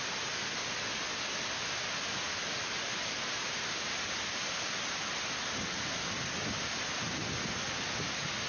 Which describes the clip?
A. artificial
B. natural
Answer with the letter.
B